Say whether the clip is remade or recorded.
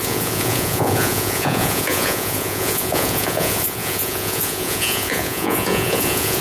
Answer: remade